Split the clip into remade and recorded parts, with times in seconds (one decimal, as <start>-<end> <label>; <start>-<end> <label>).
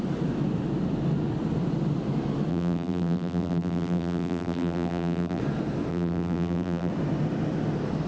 0.0-2.5 recorded; 2.5-5.4 remade; 5.4-5.9 recorded; 5.9-6.9 remade; 6.9-8.1 recorded